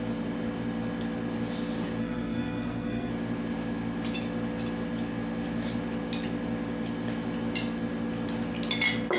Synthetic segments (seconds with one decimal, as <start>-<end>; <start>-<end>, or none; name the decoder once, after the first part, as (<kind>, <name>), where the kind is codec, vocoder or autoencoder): 2.0-3.1 (codec, SNAC)